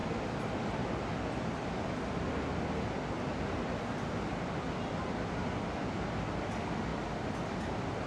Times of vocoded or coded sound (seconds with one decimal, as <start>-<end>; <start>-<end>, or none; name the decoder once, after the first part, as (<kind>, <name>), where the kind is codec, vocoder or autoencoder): none